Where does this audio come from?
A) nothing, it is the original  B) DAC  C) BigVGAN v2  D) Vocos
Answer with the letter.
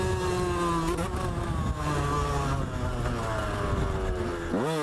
A